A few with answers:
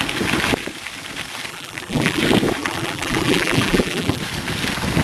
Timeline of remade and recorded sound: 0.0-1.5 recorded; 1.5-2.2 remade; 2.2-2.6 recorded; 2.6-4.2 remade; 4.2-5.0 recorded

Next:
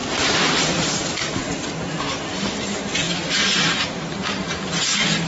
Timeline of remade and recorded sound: 0.0-5.3 recorded